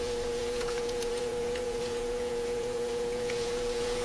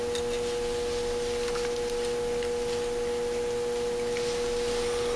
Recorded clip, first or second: second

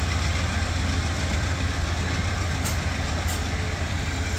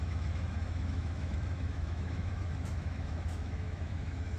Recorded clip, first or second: first